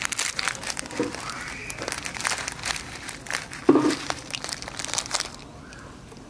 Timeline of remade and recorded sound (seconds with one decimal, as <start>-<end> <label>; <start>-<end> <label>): 0.0-6.3 recorded